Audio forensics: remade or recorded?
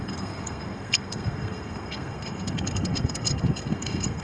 remade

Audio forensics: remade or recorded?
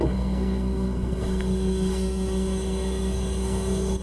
remade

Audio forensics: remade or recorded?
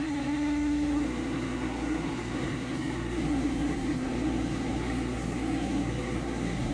remade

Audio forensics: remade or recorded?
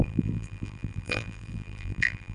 remade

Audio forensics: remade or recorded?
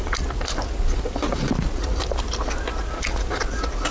recorded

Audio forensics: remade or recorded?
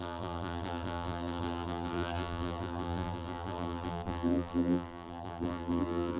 remade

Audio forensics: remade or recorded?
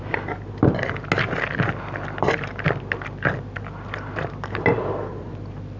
recorded